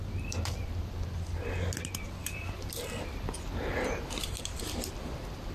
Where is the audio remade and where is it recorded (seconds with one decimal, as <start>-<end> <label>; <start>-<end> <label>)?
0.0-2.2 recorded; 2.2-4.9 remade; 4.9-5.5 recorded